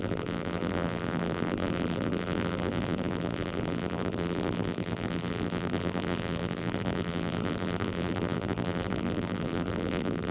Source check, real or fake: fake